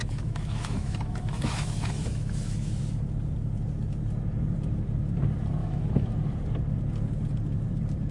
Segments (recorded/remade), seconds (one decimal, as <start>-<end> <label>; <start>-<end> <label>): 0.0-2.8 remade; 2.8-5.6 recorded; 5.6-6.1 remade; 6.1-8.1 recorded